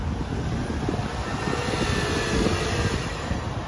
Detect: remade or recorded recorded